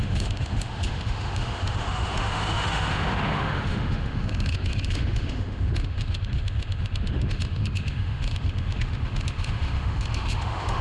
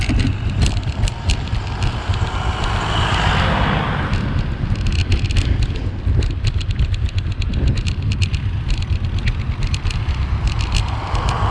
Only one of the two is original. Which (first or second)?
second